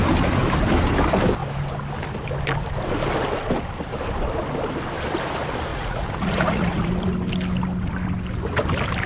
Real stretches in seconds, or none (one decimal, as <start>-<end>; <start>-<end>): 0.0-5.7; 6.9-9.1

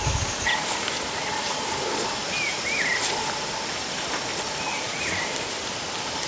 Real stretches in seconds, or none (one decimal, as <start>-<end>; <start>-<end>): 0.0-6.3

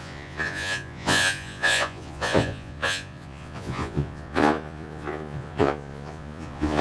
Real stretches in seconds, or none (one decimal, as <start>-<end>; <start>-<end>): none

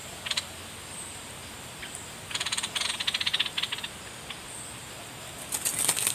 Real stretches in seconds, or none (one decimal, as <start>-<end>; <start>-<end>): 1.0-6.1

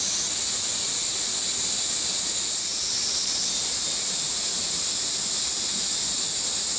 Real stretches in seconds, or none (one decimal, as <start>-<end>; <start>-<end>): 0.0-6.8

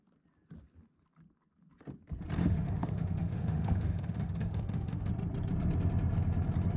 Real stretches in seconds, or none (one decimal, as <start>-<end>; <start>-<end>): 0.0-2.4; 5.1-6.8